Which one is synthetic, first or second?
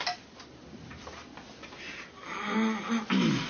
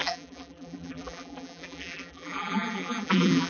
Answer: second